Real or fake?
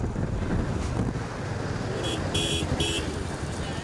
real